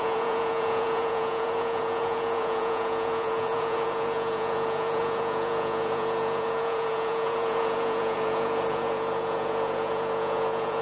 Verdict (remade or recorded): remade